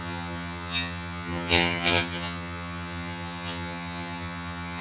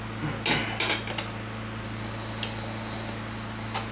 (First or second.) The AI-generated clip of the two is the first